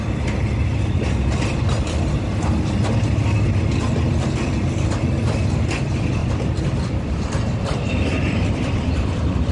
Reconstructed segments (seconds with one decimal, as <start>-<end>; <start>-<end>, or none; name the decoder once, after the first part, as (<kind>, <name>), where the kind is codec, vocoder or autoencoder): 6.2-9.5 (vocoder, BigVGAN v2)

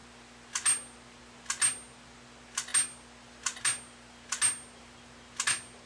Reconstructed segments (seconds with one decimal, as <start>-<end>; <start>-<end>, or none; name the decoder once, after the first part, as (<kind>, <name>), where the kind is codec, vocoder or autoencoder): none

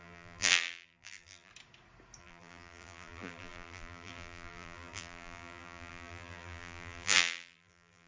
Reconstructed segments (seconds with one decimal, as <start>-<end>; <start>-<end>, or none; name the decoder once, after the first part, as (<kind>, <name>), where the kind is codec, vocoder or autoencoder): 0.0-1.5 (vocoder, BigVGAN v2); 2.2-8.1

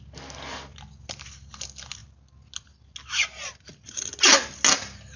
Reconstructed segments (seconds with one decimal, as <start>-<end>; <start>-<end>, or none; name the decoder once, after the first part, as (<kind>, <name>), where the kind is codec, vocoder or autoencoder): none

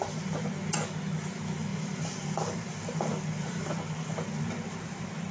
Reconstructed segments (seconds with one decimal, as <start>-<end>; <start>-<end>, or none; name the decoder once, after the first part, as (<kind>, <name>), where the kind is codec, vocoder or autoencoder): 1.7-2.7 (vocoder, BigVGAN v2); 3.4-5.3

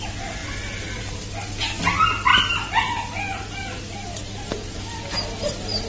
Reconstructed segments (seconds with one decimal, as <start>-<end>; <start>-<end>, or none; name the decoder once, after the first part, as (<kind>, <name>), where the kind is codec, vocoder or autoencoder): none